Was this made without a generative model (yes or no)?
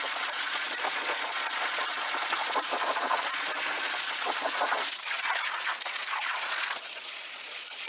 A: no